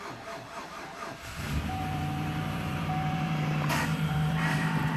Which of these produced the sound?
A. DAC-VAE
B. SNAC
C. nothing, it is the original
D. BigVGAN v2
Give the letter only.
D